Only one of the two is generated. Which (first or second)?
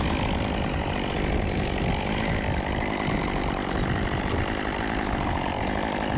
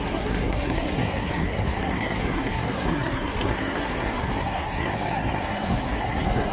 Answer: second